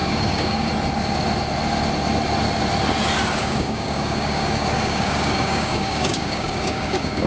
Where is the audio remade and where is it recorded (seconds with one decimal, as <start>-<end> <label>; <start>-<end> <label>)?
0.0-0.7 remade; 0.7-3.4 recorded; 3.4-7.3 remade